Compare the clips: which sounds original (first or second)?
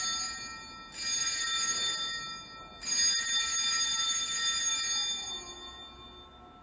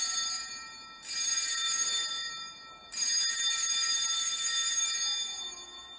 first